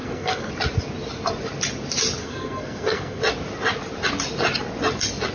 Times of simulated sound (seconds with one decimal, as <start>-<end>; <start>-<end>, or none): 0.0-0.5; 2.2-3.2